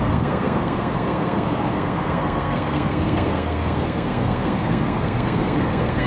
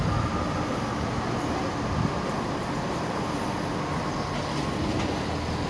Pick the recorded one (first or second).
second